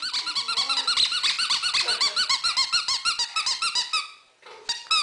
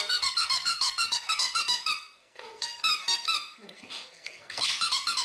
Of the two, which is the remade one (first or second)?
second